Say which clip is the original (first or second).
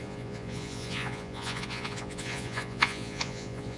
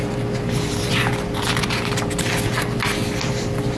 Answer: second